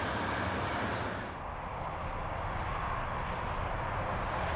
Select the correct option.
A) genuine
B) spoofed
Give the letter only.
A